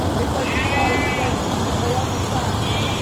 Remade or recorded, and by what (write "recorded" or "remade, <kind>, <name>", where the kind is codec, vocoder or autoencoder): recorded